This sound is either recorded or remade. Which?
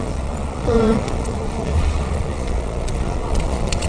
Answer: remade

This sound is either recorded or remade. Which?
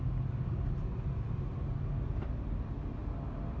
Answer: recorded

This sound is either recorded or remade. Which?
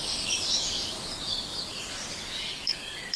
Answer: remade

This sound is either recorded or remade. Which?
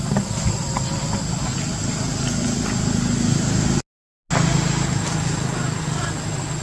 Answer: recorded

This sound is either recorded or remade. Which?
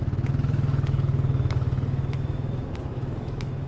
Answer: remade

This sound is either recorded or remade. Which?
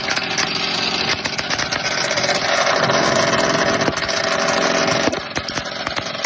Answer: recorded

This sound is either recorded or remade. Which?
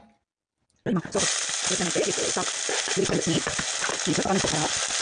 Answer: recorded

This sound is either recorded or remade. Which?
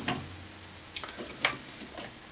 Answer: recorded